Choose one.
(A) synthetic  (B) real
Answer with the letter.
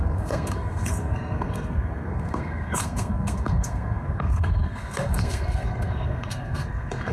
A